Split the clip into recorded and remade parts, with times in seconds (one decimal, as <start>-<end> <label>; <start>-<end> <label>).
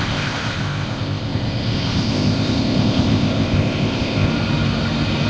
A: 0.0-4.3 remade; 4.3-5.3 recorded